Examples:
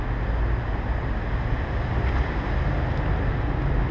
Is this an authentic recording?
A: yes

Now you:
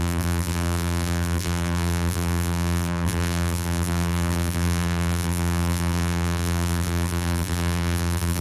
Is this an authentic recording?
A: no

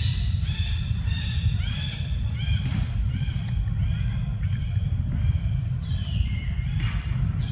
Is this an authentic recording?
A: no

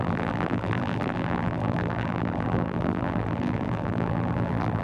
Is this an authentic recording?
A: no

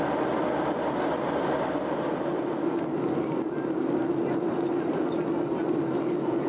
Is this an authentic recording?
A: yes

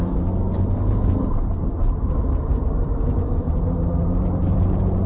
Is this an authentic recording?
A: no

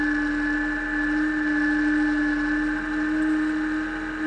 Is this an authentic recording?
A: yes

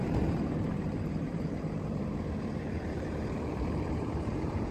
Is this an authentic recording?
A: no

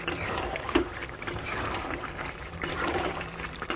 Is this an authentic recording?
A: no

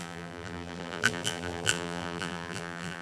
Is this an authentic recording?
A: no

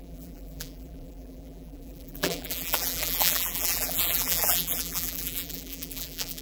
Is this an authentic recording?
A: no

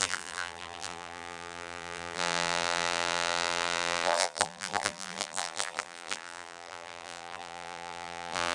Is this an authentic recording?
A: no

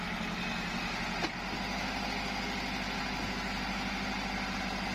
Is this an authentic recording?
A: yes